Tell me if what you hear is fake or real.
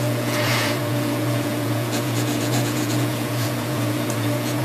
fake